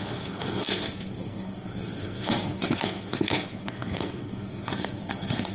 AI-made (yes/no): yes